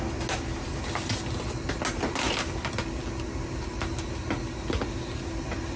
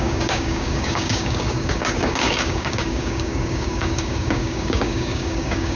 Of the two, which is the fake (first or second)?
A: second